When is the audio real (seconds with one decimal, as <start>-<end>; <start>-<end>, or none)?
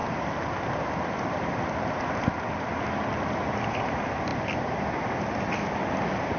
0.0-4.3; 4.8-6.4